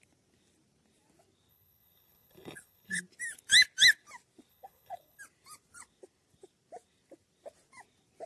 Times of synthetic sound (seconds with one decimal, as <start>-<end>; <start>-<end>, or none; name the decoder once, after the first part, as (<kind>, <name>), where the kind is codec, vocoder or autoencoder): 1.5-3.0 (codec, HILCodec); 4.5-5.2